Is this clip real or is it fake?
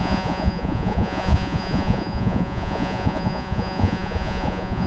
fake